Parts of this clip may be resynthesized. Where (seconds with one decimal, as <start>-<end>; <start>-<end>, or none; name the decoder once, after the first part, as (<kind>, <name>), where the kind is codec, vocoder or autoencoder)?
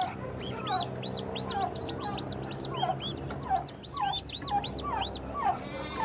none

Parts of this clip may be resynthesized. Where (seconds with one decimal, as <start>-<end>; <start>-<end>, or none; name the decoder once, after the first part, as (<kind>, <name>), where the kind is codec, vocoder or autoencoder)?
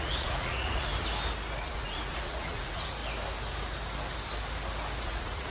0.0-0.9 (vocoder, Vocos); 1.6-3.0; 5.0-5.5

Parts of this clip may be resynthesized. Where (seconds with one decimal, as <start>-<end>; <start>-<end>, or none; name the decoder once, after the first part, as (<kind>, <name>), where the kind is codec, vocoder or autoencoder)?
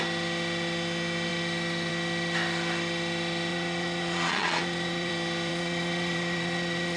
3.5-5.1 (vocoder, Vocos); 5.5-7.0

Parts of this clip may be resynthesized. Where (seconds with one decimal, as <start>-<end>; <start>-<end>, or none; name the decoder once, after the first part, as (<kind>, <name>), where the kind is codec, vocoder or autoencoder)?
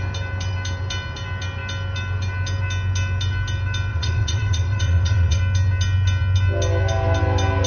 3.9-5.4 (vocoder, WaveNeXt)